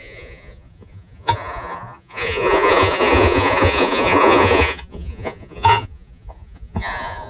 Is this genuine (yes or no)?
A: no